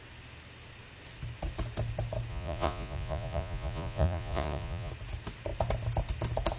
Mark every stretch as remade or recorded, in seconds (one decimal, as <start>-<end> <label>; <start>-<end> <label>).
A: 0.0-2.3 recorded; 2.3-4.9 remade; 4.9-6.6 recorded